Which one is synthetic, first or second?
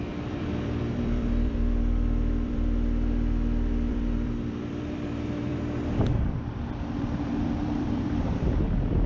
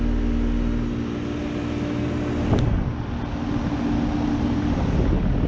first